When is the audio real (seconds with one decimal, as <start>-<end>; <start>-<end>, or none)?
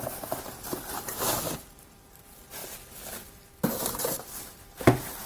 2.6-4.3